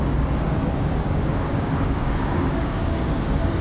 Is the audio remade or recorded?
remade